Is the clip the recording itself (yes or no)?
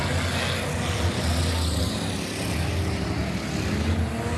yes